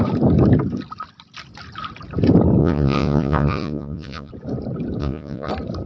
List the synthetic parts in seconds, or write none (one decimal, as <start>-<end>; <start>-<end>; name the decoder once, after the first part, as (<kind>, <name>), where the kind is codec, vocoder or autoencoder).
2.6-4.3 (vocoder, Vocos); 5.0-5.5